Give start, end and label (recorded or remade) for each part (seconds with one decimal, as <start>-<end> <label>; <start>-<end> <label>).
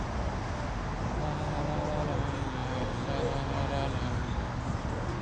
0.0-5.2 recorded